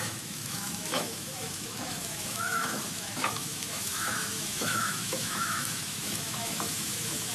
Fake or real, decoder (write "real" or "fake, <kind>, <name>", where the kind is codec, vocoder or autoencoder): fake, autoencoder, DAC-VAE